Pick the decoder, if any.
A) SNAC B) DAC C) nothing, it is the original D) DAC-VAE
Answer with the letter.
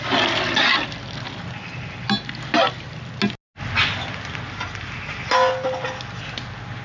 C